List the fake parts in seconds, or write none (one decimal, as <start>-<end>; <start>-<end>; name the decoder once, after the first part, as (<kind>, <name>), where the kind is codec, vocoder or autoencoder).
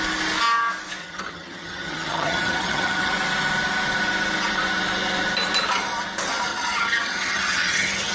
1.0-3.1 (vocoder, HiFi-GAN); 6.5-8.1